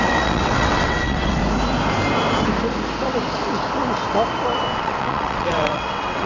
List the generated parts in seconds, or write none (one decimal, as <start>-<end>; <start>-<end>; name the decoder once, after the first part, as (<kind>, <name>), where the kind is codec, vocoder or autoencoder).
0.0-1.4 (vocoder, WaveNeXt); 4.8-6.3

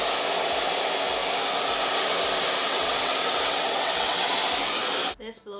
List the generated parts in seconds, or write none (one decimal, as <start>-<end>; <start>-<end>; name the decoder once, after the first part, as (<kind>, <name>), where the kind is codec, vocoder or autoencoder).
2.6-4.3 (vocoder, WaveNeXt)

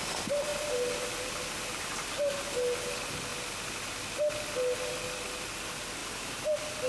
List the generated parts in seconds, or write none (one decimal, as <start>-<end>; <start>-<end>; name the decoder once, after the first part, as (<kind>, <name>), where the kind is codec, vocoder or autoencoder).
none

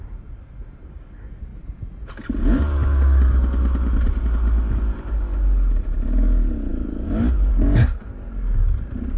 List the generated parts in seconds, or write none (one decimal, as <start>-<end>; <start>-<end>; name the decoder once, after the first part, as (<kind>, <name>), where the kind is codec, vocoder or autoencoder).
none

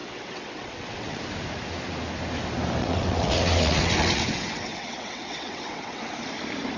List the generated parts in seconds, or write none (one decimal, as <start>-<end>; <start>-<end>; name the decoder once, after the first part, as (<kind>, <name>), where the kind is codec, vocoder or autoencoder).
0.0-1.2 (vocoder, WaveNeXt); 2.8-6.1

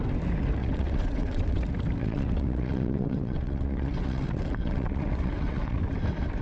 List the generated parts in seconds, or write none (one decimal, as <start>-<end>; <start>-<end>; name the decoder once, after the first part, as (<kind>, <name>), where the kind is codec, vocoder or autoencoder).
0.6-1.6 (vocoder, WaveNeXt); 2.0-5.8